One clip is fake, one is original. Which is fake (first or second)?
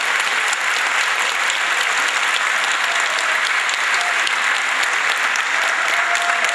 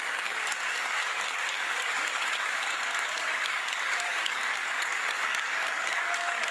second